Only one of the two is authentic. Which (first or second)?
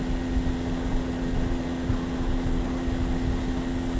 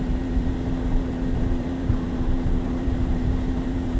first